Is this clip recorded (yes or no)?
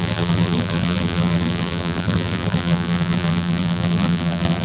no